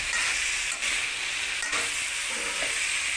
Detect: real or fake real